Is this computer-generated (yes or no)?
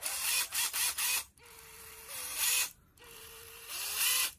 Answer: yes